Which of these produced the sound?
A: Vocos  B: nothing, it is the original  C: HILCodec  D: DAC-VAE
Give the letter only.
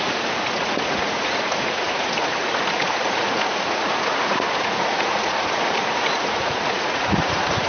A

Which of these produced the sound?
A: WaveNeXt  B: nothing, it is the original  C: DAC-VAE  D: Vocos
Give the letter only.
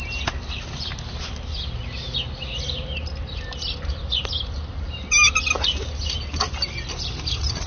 B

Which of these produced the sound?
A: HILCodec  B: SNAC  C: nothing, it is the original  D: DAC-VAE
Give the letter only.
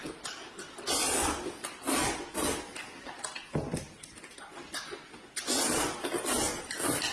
C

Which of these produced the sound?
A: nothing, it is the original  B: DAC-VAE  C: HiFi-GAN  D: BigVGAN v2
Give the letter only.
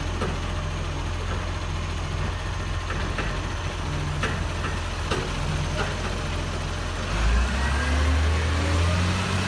A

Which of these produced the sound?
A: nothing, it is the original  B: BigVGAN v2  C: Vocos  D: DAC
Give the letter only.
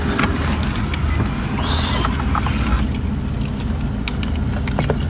A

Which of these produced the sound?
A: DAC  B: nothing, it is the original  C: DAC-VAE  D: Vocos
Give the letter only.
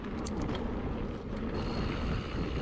B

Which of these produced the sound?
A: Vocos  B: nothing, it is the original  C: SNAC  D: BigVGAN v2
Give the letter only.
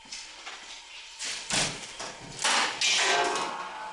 B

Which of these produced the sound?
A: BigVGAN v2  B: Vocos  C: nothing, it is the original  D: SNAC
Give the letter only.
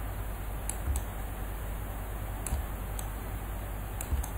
C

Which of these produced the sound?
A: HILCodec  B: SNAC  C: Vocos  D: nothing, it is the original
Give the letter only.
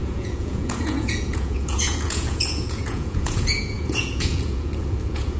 C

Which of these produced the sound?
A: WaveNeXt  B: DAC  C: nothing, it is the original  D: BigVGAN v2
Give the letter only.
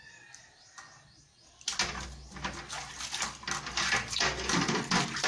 C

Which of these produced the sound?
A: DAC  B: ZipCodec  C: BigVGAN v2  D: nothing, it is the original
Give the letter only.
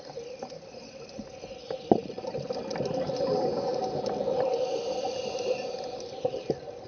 D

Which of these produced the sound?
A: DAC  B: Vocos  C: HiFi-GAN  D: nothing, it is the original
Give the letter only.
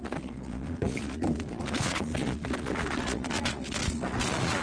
B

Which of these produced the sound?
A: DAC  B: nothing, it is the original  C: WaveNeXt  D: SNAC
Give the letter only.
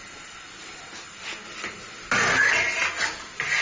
B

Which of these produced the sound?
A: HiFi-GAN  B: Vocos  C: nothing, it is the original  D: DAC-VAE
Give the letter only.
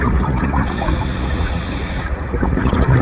B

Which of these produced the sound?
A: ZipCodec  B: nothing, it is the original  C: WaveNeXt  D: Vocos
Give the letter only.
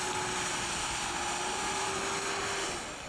B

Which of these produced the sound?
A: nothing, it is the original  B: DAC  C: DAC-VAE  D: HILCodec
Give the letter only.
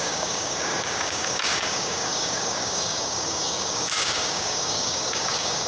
B